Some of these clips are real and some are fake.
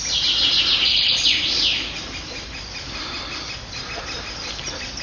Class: real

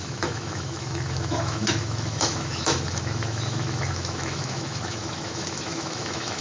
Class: fake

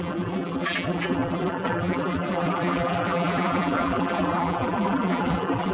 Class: fake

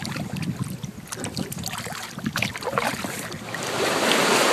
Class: real